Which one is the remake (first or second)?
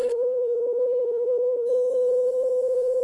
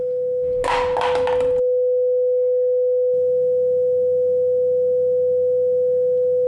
first